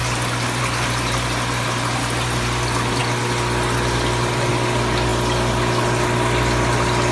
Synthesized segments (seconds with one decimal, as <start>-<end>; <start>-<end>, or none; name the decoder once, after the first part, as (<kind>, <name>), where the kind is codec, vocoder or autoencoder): none